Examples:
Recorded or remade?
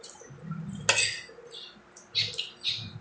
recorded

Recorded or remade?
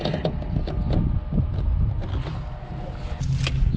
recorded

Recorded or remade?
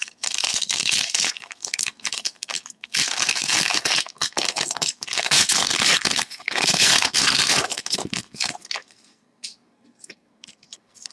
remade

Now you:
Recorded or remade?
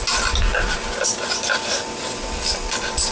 recorded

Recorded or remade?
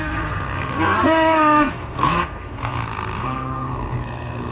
remade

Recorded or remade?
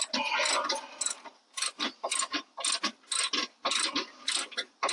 recorded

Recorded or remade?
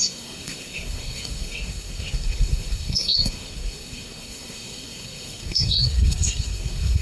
remade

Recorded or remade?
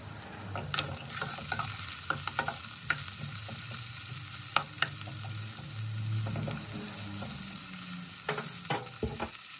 recorded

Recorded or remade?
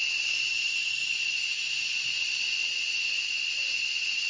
recorded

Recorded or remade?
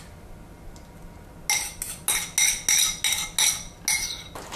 recorded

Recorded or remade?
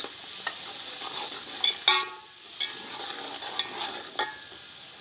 recorded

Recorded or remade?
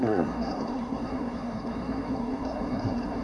remade